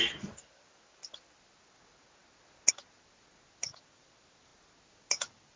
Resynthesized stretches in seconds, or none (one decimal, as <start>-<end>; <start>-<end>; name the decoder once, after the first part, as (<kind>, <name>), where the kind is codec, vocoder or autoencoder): none